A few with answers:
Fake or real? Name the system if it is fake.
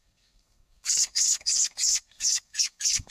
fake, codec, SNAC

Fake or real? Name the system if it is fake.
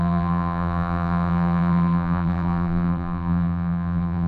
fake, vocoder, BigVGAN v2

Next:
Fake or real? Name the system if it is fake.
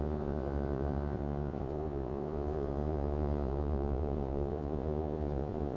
fake, vocoder, Vocos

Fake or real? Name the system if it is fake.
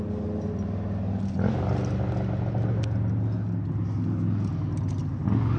real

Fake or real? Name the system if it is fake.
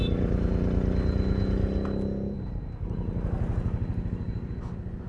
real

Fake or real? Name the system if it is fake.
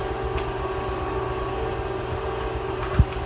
real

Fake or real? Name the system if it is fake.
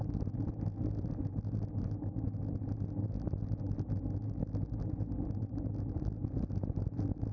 real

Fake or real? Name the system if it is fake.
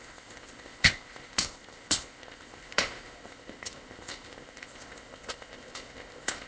fake, codec, ZipCodec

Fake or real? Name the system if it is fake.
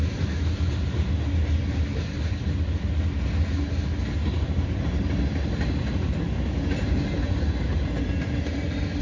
real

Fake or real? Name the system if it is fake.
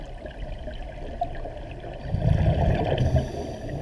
real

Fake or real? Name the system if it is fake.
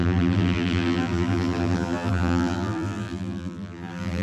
fake, vocoder, BigVGAN v2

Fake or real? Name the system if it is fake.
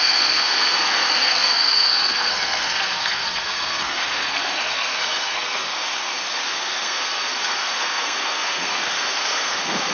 fake, codec, SNAC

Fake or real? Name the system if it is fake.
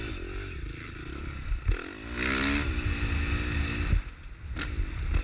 real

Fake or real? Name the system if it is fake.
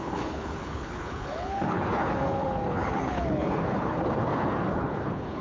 fake, codec, HILCodec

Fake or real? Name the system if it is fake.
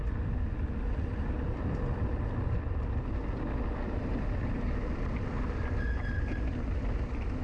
real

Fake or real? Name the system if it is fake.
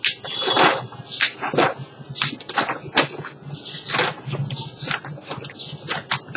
real